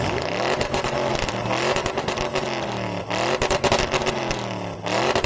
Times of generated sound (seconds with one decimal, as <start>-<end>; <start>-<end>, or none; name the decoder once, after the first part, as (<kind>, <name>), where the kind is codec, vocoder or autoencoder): none